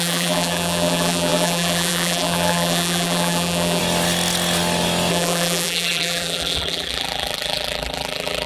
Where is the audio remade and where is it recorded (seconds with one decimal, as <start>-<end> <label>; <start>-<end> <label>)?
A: 0.0-3.8 remade; 3.8-5.1 recorded; 5.1-8.5 remade